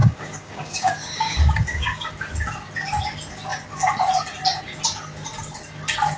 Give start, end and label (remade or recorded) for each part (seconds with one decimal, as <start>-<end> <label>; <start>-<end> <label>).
0.0-2.1 remade; 2.1-6.2 recorded